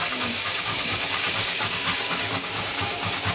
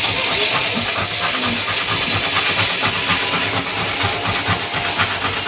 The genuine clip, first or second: second